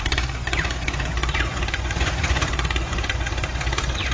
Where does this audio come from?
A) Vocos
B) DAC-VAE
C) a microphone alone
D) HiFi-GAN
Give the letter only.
A